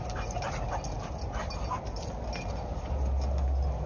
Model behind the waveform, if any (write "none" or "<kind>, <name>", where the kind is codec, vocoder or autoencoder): none